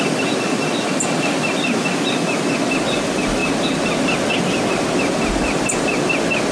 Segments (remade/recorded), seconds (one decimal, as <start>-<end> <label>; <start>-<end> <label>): 0.0-6.5 recorded